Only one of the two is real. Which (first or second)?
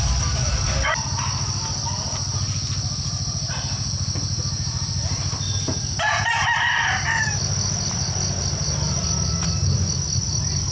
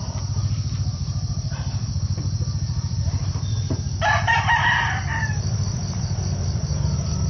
first